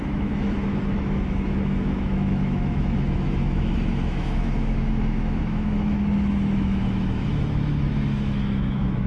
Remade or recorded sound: remade